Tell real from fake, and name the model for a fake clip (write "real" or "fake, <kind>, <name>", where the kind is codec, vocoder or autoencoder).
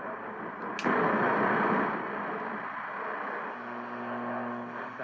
real